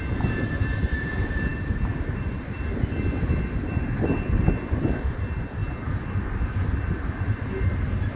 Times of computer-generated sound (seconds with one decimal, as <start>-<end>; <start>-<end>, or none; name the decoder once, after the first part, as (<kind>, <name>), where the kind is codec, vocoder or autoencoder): none